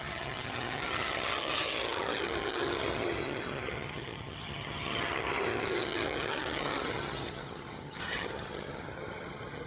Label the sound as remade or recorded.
remade